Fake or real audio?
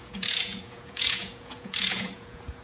fake